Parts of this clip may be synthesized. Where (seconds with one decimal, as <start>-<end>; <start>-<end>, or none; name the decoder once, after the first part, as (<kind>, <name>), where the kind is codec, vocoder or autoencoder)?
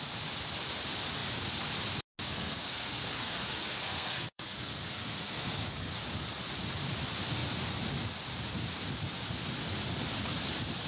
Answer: 2.3-5.9 (codec, SNAC)